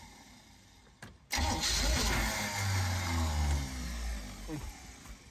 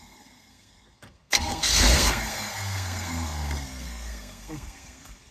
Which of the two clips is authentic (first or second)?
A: first